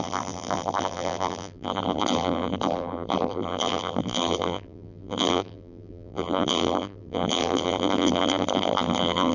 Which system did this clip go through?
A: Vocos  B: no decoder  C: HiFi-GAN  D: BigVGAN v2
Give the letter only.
D